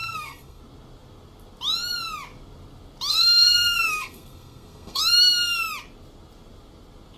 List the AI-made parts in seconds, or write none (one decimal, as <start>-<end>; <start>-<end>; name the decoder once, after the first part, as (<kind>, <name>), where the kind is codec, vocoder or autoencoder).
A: 0.0-0.6 (codec, SNAC); 3.1-5.0